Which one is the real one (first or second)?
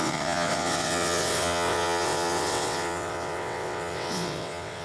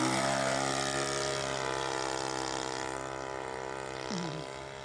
second